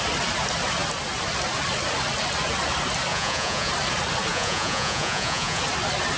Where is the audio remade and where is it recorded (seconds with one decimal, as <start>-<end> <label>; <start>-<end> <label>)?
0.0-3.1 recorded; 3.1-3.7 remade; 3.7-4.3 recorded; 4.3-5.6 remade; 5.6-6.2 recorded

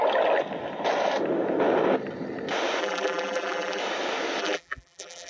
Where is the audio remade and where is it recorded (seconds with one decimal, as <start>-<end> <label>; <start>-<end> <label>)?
0.0-2.8 recorded; 2.8-3.8 remade; 3.8-4.4 recorded; 4.4-5.3 remade

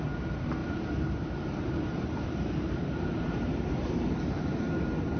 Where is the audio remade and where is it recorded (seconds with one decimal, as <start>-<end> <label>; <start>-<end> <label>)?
0.0-0.6 recorded; 0.6-3.7 remade; 3.7-5.2 recorded